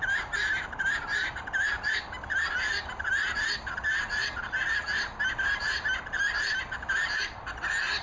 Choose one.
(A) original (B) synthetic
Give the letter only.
A